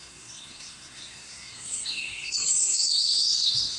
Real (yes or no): no